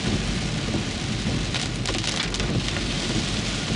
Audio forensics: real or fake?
real